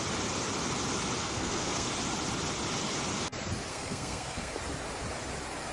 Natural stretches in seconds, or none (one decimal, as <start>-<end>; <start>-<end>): 0.0-1.2; 1.9-3.7; 4.5-5.7